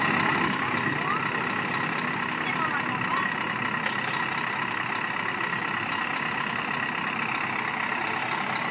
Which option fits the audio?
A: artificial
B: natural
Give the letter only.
B